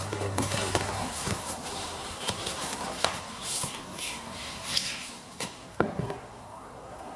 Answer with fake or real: fake